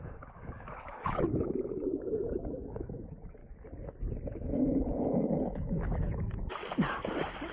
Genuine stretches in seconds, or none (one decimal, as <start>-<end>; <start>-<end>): 3.4-4.3; 6.6-7.5